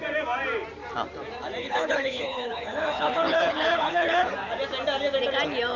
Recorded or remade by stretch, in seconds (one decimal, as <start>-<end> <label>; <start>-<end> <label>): 0.0-1.6 recorded; 1.6-4.3 remade; 4.3-5.8 recorded